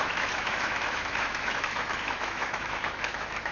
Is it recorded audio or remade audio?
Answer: remade